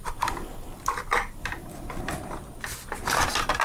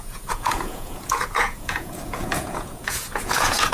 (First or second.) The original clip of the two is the first